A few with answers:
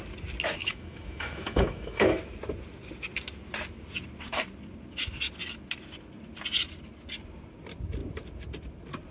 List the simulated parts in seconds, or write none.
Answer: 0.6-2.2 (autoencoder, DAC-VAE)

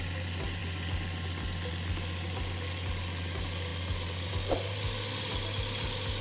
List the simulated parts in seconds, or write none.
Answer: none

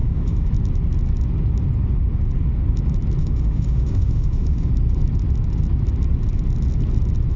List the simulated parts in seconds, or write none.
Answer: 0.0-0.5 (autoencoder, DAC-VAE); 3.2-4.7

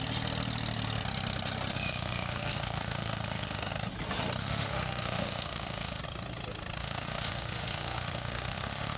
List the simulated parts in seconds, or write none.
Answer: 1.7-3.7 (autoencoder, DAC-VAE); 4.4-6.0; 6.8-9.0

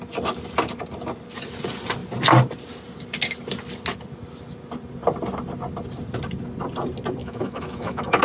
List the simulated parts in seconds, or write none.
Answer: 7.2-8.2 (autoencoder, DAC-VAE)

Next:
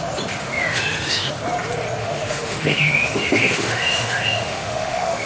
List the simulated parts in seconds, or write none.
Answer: 0.4-1.3 (autoencoder, DAC-VAE); 2.0-5.3

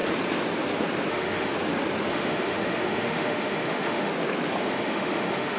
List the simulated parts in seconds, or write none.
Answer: 1.1-1.5 (autoencoder, DAC-VAE); 2.1-4.1; 4.6-5.6

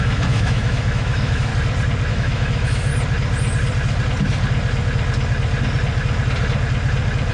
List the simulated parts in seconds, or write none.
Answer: 0.0-1.5 (autoencoder, DAC-VAE); 2.1-2.9